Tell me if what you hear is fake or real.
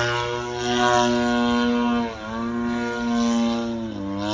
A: real